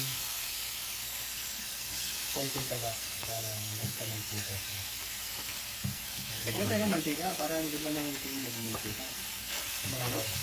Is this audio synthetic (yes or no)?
yes